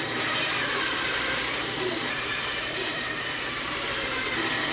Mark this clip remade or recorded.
remade